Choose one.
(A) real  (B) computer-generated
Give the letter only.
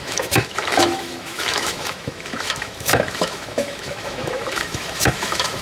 B